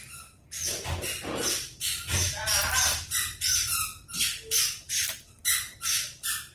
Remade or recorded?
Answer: remade